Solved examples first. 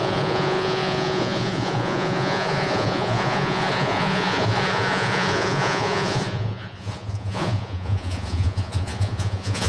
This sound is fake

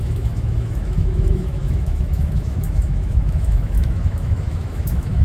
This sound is fake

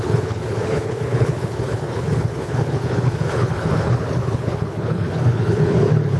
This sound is fake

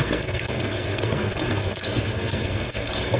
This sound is fake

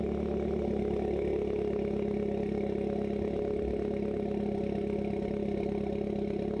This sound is real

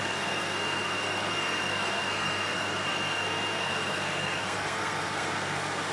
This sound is fake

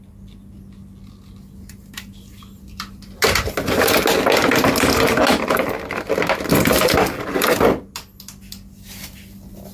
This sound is real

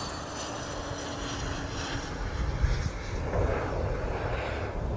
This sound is real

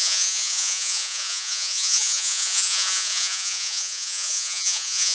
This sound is fake